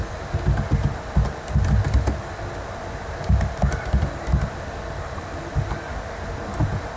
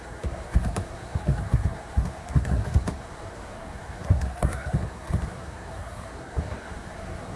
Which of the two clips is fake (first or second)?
second